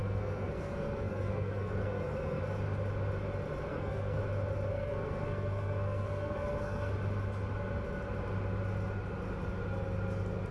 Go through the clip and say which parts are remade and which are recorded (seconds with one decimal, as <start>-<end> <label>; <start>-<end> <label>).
0.0-2.4 remade; 2.4-3.7 recorded; 3.7-4.2 remade; 4.2-4.7 recorded; 4.7-6.9 remade; 6.9-10.5 recorded